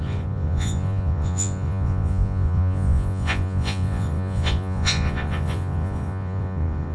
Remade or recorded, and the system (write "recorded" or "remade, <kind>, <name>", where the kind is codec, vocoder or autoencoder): remade, vocoder, Vocos